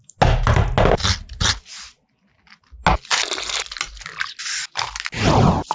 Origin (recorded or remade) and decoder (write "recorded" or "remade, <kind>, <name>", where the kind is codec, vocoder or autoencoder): recorded